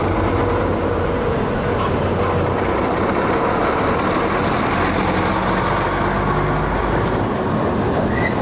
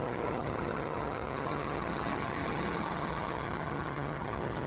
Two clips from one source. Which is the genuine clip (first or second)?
first